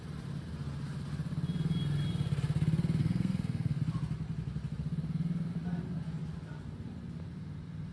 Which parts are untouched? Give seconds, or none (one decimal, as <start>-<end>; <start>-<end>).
0.0-3.0; 3.8-7.9